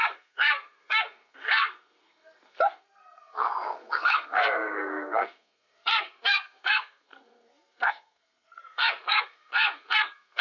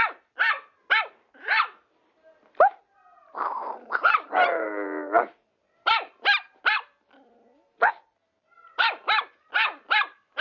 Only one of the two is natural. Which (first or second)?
second